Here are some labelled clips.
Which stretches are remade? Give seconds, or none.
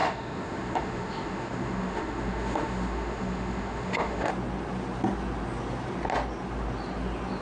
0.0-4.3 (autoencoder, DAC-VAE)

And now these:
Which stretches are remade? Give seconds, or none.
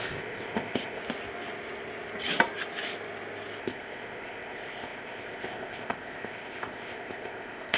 0.0-1.0 (codec, ZipCodec); 3.6-7.8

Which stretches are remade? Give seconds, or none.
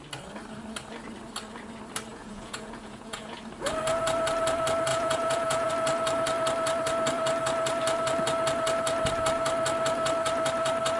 2.1-3.4 (vocoder, Vocos); 4.9-5.7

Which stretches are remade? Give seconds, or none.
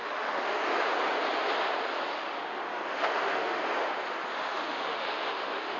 0.0-0.6 (autoencoder, DAC-VAE); 2.1-3.6; 4.3-5.8